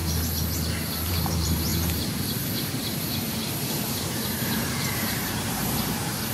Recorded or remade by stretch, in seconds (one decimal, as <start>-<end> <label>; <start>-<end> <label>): 0.0-1.1 recorded; 1.1-6.3 remade